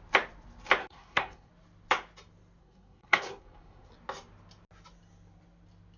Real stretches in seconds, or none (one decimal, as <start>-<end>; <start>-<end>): 0.0-0.8; 1.5-2.6; 3.9-6.0